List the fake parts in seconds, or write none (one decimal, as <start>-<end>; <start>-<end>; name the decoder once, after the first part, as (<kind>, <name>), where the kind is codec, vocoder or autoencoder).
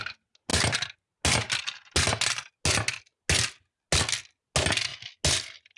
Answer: none